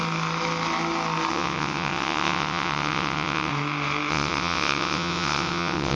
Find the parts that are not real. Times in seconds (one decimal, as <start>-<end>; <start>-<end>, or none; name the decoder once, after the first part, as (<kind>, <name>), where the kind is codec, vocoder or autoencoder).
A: 1.3-3.5 (vocoder, WaveNeXt); 4.1-6.0